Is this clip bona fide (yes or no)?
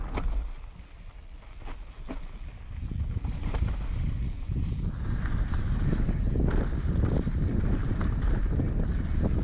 yes